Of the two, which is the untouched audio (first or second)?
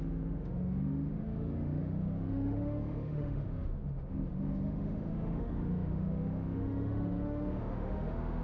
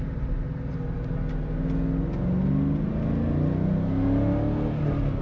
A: second